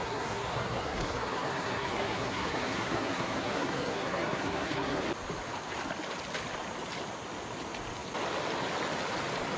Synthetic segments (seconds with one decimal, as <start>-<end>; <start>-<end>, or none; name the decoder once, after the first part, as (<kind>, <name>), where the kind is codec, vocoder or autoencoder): 0.0-5.0 (codec, SNAC)